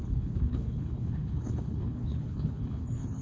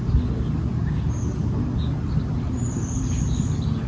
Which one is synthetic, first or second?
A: first